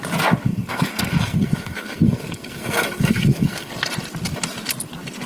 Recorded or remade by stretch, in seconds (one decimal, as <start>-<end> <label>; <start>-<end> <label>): 0.0-0.5 recorded; 0.5-3.7 remade; 3.7-5.3 recorded